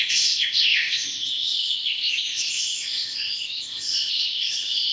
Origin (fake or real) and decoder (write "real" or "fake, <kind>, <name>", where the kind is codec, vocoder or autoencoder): fake, codec, ZipCodec